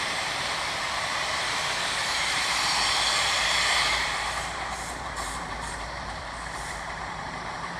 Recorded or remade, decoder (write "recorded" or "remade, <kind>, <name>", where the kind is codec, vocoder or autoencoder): remade, vocoder, BigVGAN v2